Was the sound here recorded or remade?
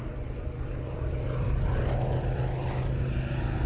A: recorded